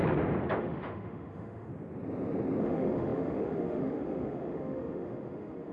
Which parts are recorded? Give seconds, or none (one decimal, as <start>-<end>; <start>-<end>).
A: 0.0-0.6; 1.7-2.6